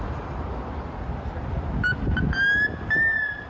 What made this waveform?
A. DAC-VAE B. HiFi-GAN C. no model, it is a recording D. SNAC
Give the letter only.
C